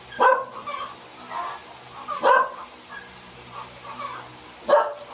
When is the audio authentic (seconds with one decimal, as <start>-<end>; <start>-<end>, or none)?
0.0-5.1